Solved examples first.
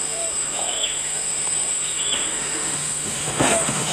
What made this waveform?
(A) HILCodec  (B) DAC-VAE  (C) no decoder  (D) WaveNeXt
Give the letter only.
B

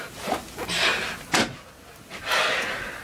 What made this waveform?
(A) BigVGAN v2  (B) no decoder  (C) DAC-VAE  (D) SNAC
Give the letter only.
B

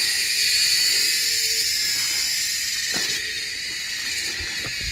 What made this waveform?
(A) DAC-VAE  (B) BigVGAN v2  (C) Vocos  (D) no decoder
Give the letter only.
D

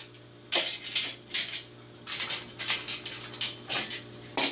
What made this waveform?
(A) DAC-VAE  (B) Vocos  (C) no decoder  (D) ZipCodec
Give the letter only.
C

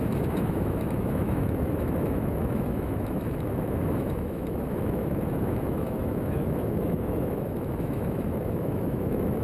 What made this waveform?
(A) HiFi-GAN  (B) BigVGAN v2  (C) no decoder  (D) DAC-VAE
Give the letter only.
D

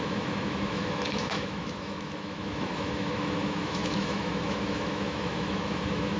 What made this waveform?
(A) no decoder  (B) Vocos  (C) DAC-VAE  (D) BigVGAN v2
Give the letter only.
C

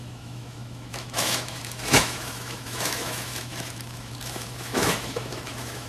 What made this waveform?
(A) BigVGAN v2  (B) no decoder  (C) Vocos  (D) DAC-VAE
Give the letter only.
D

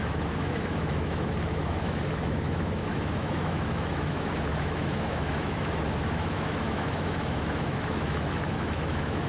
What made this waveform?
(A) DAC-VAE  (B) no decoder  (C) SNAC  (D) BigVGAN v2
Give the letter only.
A